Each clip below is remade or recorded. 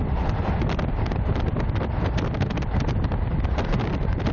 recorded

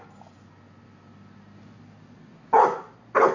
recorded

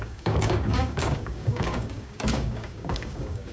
remade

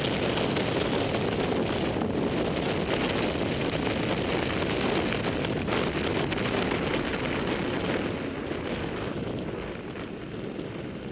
recorded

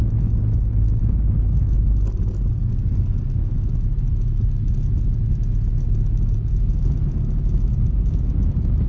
recorded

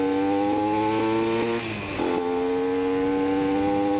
recorded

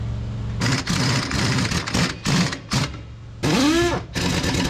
recorded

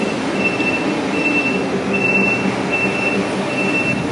recorded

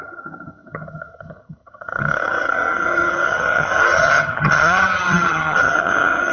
remade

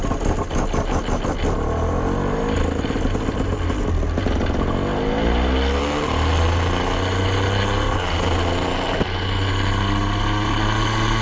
recorded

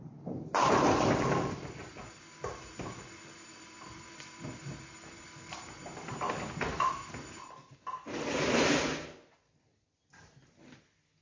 recorded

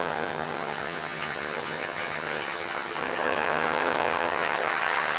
remade